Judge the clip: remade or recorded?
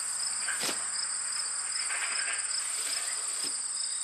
recorded